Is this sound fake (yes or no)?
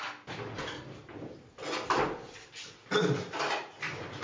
no